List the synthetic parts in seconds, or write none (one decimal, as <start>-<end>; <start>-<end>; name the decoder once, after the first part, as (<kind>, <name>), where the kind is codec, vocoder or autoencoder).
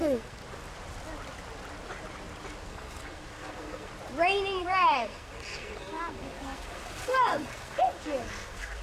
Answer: 0.0-0.4 (codec, SNAC); 2.6-3.9; 4.6-8.8